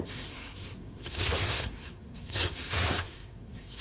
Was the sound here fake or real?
fake